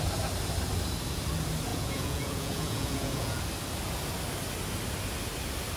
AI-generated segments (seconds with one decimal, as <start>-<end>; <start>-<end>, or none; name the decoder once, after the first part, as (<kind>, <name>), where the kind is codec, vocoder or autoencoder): 1.7-3.4 (vocoder, Vocos)

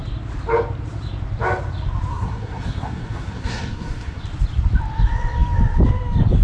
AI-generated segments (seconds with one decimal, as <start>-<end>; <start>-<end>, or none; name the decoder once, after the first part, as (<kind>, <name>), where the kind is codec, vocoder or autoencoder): 2.1-4.2 (codec, SNAC)